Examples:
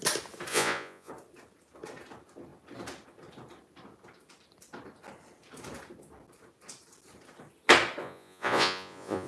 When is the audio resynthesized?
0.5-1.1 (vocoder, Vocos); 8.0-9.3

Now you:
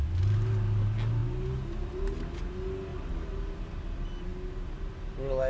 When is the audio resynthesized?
none